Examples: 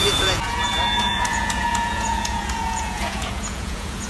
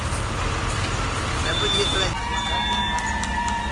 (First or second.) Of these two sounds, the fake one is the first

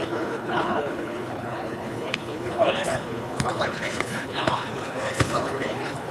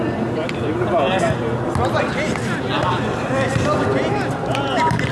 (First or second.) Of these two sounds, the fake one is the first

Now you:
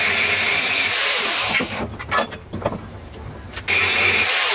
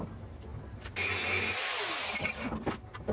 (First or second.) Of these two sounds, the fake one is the first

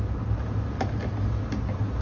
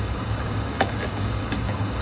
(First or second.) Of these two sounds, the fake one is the second